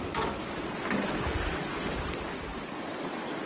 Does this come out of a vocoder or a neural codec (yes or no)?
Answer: no